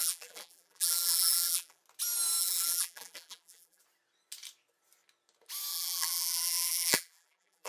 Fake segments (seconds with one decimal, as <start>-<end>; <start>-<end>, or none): 0.0-1.8; 2.4-3.8; 5.7-7.7